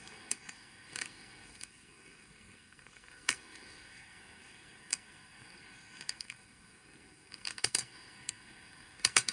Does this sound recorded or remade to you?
remade